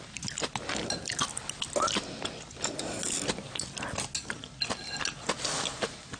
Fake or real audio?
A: real